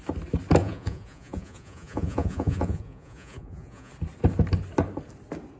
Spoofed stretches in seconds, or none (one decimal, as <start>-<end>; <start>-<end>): 0.6-3.9